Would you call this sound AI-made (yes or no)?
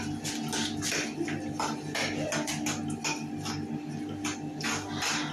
no